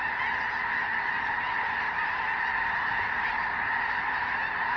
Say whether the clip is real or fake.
real